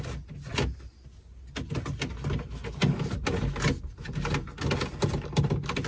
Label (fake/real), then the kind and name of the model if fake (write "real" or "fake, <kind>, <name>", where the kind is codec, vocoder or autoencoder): real